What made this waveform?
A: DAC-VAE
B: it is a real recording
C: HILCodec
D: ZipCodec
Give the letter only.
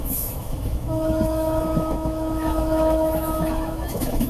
A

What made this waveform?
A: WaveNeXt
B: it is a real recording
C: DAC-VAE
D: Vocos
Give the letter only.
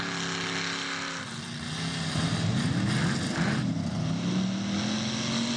B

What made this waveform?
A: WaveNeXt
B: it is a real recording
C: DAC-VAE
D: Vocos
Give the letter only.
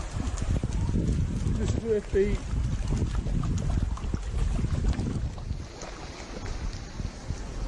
B